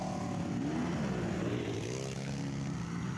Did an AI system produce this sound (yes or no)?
no